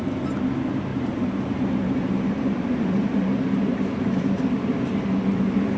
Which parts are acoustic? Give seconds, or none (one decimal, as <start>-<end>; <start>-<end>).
0.0-0.9; 4.4-5.8